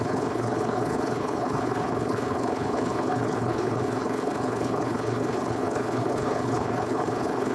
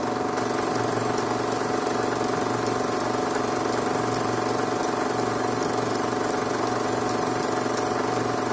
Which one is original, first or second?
second